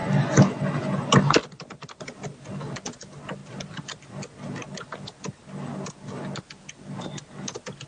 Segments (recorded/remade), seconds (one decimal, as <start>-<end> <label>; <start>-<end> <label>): 0.0-7.9 recorded